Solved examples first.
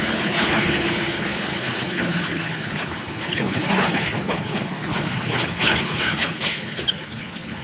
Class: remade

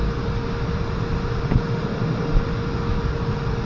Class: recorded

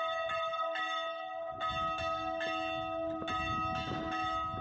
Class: recorded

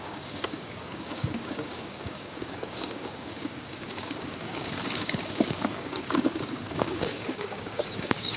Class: remade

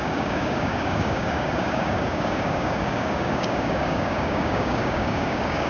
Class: remade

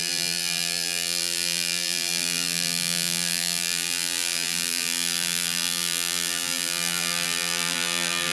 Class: remade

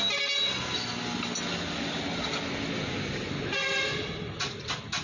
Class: recorded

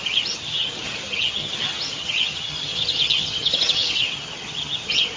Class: remade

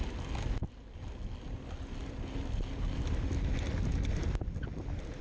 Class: recorded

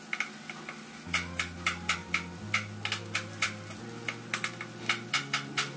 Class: recorded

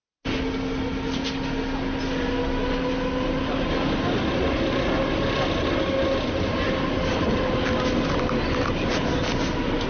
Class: recorded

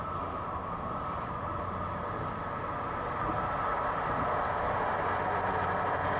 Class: recorded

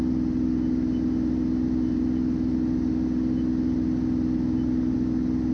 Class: recorded